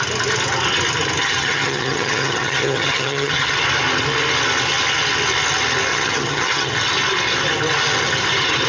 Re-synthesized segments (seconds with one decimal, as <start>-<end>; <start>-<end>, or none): 1.2-3.5; 5.9-6.7